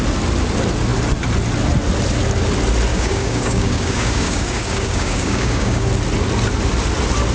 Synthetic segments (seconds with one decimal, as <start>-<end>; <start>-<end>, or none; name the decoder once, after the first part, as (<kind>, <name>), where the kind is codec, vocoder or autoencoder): 2.9-5.9 (codec, DAC)